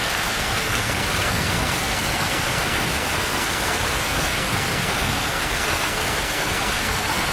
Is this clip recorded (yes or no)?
no